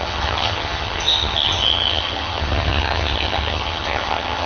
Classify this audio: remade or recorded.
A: remade